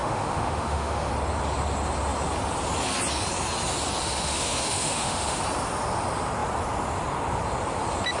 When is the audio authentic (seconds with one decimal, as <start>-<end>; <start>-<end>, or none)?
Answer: 1.1-4.0; 5.4-8.2